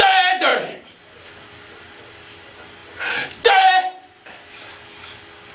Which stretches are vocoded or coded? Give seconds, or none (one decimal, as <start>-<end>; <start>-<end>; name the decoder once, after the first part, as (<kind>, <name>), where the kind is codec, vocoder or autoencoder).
0.5-1.0 (vocoder, BigVGAN v2)